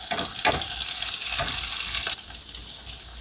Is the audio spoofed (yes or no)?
no